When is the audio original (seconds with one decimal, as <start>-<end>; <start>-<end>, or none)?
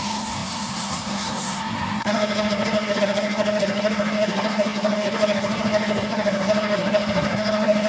none